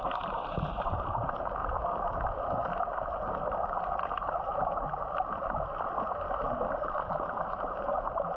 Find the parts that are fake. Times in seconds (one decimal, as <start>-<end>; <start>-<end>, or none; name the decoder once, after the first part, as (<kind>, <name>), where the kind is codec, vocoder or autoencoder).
0.0-1.6 (vocoder, BigVGAN v2); 6.4-8.4